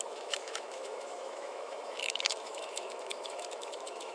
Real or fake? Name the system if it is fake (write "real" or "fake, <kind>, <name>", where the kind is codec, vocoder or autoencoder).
fake, autoencoder, DAC-VAE